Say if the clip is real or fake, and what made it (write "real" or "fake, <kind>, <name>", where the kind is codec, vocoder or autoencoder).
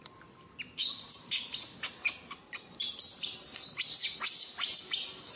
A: real